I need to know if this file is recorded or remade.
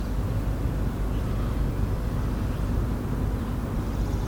recorded